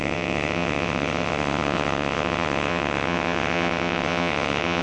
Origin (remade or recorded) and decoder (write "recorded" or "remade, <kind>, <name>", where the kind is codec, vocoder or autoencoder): remade, vocoder, WaveNeXt